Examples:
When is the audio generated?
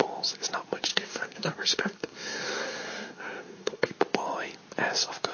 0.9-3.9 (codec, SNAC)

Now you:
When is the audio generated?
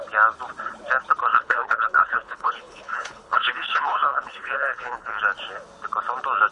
1.3-5.2 (codec, HILCodec)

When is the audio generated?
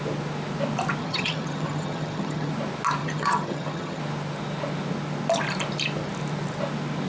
1.0-2.5 (vocoder, HiFi-GAN); 3.0-4.0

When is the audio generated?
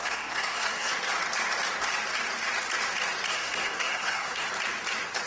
0.0-0.9 (codec, SNAC); 3.3-4.5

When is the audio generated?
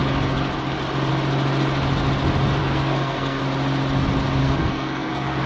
2.6-3.4 (codec, SNAC); 4.4-5.5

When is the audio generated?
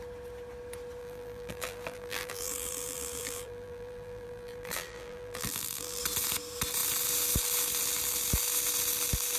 1.0-6.0 (vocoder, BigVGAN v2)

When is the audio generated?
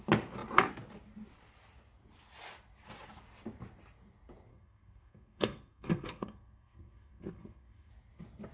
4.5-7.9 (codec, SNAC)